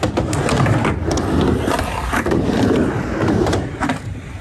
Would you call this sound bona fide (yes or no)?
yes